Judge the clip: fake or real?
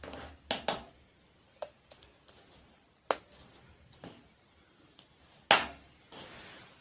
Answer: real